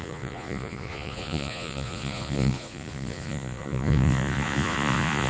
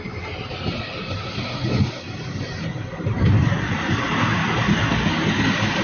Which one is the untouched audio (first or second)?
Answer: second